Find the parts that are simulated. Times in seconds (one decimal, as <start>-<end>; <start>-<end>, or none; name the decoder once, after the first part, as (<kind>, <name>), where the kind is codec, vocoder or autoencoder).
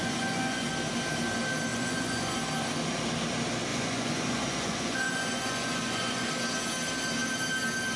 0.0-0.7 (vocoder, Vocos); 1.7-2.3; 3.7-6.3